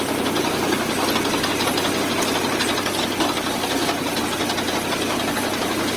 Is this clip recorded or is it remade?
recorded